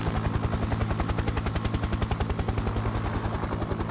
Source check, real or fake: real